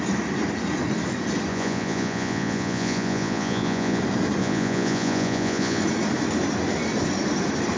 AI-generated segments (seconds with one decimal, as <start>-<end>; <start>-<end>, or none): 1.5-4.0; 4.4-5.8